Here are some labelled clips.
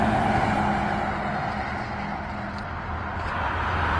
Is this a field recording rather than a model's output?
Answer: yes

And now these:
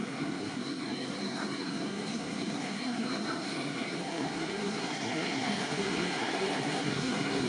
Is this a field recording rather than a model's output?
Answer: no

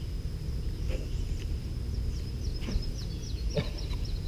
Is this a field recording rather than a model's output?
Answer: yes